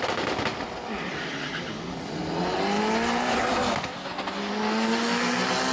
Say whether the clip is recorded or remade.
recorded